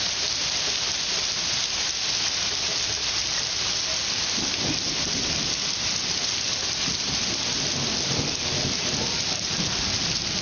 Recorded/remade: recorded